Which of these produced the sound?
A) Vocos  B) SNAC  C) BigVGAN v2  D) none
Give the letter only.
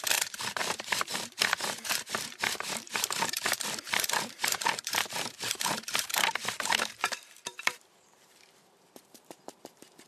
C